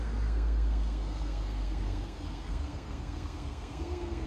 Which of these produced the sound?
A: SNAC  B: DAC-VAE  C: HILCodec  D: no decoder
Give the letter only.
A